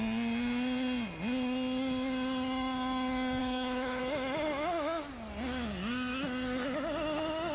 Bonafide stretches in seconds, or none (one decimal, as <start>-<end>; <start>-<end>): 0.0-3.4; 4.0-7.5